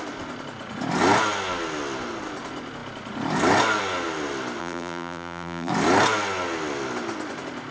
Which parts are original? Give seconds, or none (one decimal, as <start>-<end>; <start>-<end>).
0.0-4.6; 5.7-7.7